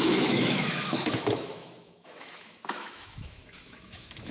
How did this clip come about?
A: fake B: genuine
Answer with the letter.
A